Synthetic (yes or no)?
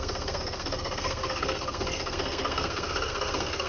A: yes